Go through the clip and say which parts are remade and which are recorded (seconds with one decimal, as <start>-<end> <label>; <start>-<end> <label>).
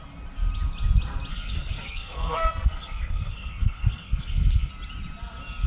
0.0-1.3 recorded; 1.3-4.7 remade; 4.7-5.7 recorded